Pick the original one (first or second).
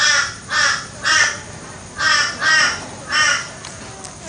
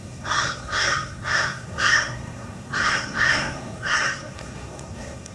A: first